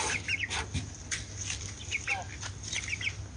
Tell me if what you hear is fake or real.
real